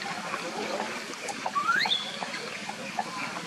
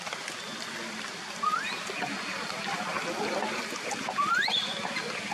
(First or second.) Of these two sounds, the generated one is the first